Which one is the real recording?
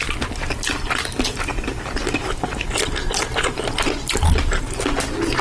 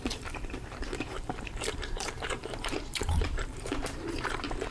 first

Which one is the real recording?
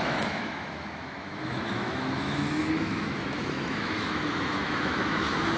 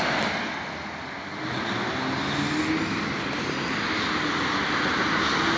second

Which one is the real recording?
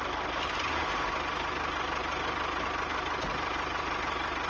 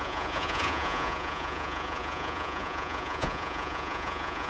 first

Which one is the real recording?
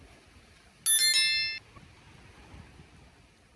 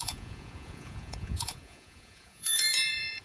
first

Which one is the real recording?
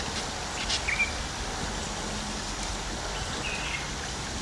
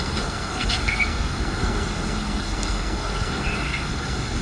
first